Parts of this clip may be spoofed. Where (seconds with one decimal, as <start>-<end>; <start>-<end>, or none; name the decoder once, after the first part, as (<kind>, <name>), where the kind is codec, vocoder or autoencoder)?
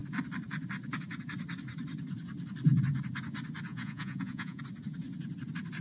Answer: 3.7-4.6 (vocoder, Vocos)